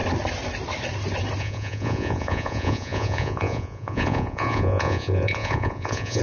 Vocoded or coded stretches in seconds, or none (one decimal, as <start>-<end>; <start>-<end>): 1.4-6.2